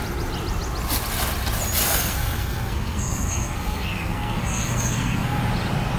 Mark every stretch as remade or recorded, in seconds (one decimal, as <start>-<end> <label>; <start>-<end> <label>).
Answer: 0.0-1.8 recorded; 1.8-5.4 remade; 5.4-6.0 recorded